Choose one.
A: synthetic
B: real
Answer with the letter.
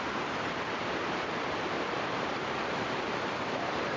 A